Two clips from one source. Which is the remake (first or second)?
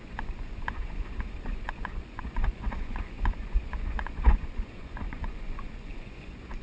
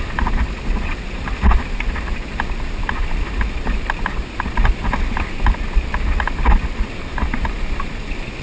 first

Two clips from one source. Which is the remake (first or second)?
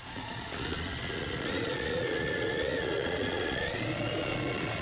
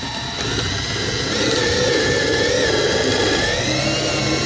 first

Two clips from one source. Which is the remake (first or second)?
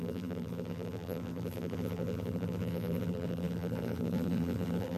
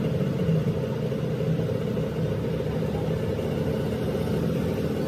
first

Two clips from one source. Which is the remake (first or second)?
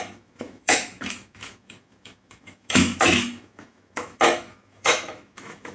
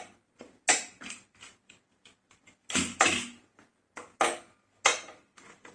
first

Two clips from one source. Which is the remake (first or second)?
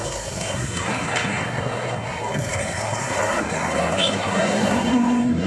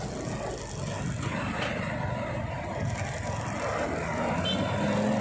first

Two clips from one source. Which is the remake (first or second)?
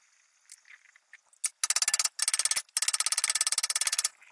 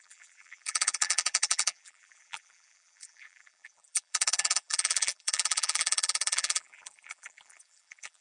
second